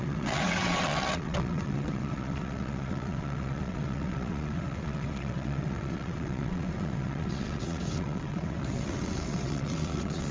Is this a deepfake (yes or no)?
yes